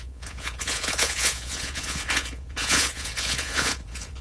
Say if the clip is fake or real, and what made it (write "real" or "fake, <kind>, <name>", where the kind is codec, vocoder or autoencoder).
fake, vocoder, Vocos